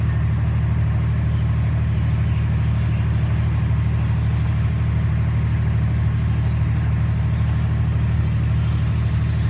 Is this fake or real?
real